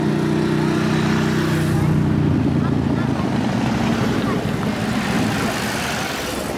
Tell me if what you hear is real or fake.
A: real